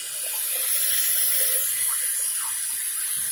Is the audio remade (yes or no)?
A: no